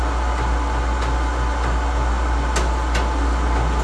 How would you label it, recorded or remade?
recorded